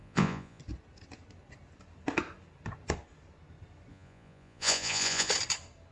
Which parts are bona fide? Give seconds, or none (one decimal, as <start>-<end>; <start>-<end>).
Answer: 0.6-3.9; 5.3-5.9